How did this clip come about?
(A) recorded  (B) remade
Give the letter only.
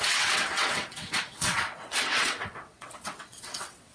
B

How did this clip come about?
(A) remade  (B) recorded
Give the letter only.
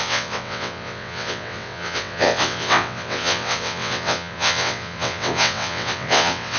A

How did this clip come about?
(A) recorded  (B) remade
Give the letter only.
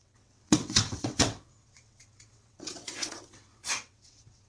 B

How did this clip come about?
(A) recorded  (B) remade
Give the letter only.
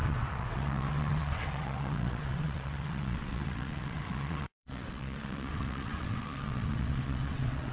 B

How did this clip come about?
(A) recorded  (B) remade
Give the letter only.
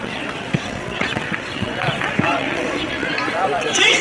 B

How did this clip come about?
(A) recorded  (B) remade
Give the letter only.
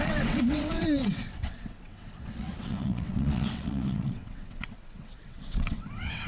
B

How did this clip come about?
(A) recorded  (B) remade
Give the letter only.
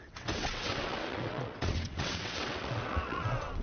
B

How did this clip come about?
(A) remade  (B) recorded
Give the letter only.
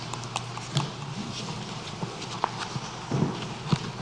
B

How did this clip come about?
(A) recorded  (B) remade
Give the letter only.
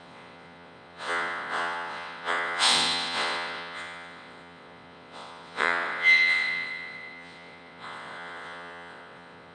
B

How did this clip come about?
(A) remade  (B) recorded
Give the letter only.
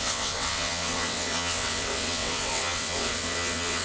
A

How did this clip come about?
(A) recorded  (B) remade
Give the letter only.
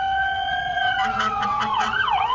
B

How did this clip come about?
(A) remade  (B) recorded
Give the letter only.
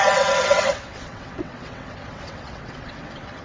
A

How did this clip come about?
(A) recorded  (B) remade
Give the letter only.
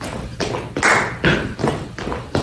A